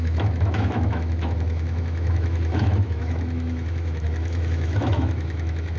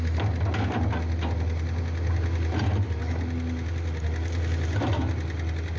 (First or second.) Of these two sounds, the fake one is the first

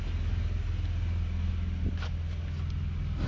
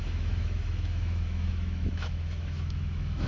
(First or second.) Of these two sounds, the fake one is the second